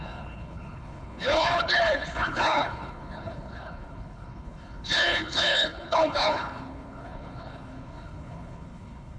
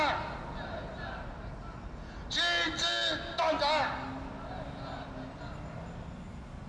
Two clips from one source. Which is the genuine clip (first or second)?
second